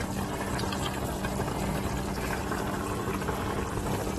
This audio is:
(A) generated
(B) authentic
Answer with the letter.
B